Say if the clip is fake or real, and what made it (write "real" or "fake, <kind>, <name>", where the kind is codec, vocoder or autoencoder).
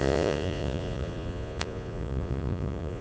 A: fake, vocoder, Vocos